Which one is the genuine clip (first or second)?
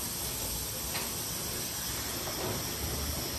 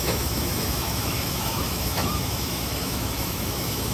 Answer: first